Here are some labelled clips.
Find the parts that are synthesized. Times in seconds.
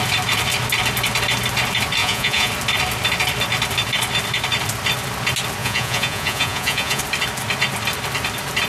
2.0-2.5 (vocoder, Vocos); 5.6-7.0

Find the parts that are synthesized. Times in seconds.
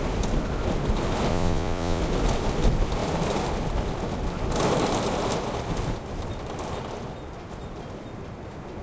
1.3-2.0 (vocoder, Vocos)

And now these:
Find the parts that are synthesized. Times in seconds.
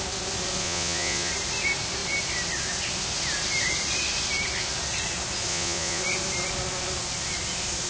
0.6-1.3 (vocoder, Vocos); 5.5-6.0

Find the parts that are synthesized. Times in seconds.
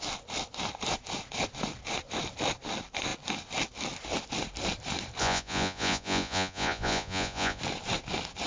5.2-7.6 (vocoder, Vocos)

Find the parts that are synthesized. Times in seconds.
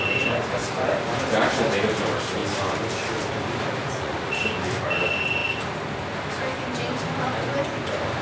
3.8-4.4 (vocoder, Vocos)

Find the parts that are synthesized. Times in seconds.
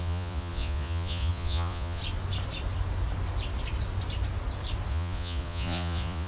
0.0-2.0 (vocoder, Vocos); 4.9-6.3